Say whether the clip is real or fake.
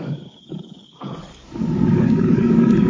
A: fake